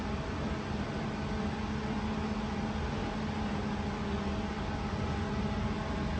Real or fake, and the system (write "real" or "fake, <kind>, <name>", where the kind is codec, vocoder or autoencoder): real